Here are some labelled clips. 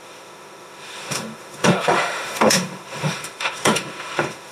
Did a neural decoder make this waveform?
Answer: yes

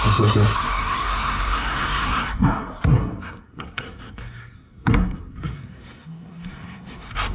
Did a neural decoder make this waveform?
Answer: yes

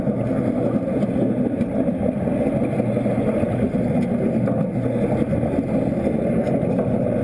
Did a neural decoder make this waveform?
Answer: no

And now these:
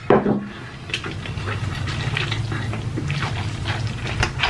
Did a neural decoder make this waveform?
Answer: no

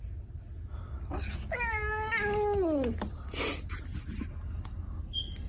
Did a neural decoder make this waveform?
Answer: no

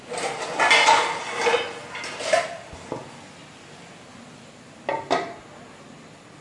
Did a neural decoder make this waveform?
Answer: no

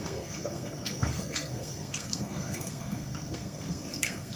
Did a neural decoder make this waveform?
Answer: yes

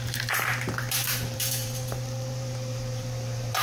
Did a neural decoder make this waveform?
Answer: yes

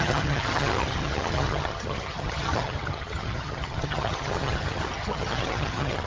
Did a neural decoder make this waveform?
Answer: yes